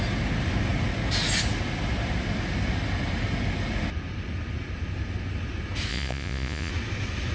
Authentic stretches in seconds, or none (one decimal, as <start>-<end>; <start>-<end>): 0.0-5.9; 6.7-7.3